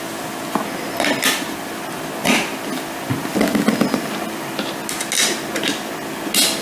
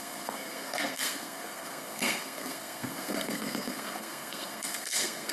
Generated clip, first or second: second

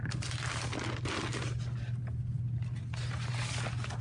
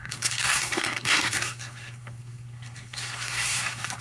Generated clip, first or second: second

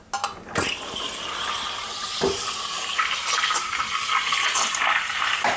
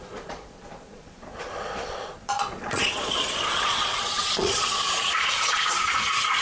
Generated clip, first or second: second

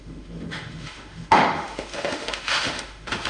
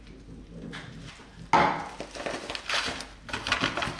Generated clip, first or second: first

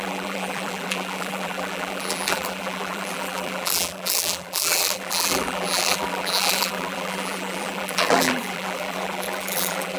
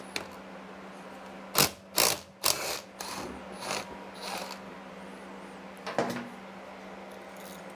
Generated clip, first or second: first